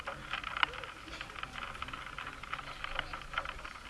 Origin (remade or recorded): recorded